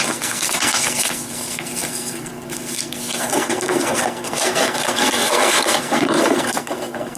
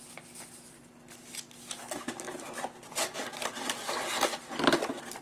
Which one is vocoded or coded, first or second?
first